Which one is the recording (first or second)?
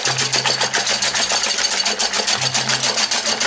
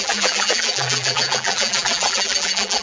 first